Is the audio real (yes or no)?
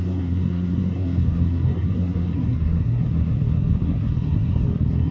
no